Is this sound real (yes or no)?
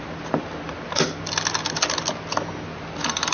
yes